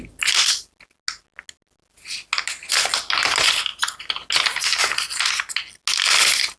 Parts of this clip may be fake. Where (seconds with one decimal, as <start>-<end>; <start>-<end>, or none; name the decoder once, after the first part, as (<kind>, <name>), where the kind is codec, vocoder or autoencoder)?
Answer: none